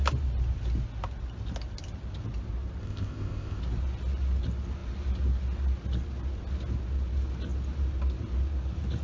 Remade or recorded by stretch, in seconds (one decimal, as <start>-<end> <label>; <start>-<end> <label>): 0.0-2.8 recorded; 2.8-3.6 remade; 3.6-9.0 recorded